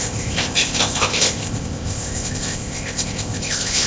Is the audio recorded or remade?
remade